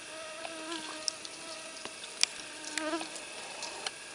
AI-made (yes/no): no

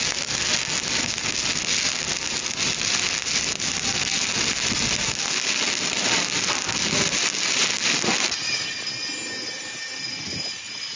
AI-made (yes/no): no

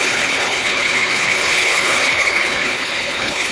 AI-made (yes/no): yes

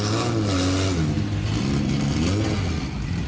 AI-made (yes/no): no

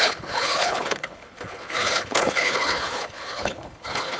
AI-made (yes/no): yes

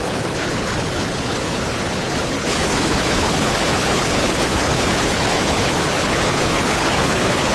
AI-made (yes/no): yes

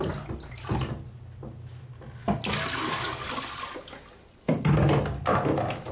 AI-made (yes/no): no